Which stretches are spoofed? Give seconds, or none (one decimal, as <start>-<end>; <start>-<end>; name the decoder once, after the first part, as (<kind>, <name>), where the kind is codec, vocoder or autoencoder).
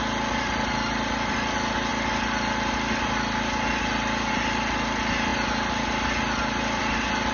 none